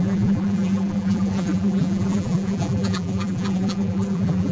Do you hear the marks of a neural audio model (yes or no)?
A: yes